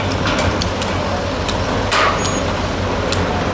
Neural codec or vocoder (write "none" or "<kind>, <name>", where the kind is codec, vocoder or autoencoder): none